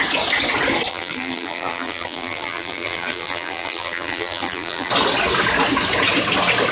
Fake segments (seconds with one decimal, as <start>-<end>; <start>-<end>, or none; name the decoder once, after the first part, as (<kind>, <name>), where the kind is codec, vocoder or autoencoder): 0.9-4.9 (vocoder, BigVGAN v2)

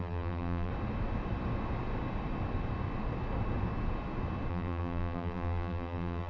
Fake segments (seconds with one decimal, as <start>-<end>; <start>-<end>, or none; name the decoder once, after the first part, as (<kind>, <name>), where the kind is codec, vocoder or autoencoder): 0.0-0.7 (vocoder, BigVGAN v2); 4.5-6.3

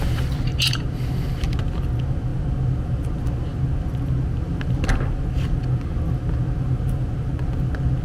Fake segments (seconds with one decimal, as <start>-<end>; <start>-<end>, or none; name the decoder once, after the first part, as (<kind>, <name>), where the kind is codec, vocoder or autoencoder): none

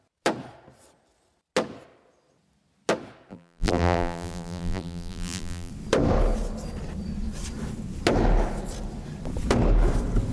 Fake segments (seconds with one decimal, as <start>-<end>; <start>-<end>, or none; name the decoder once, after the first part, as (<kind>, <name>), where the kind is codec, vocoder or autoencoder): 3.3-5.7 (vocoder, BigVGAN v2)

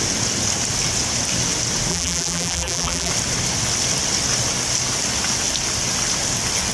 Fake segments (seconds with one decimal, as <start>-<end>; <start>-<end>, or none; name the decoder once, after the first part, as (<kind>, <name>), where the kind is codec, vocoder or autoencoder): 1.9-3.1 (vocoder, BigVGAN v2)

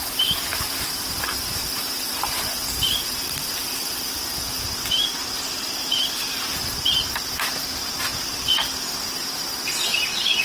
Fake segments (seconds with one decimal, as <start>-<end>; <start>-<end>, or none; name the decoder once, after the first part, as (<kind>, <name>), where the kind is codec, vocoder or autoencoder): 0.0-3.8 (vocoder, BigVGAN v2); 6.6-8.1; 9.0-10.4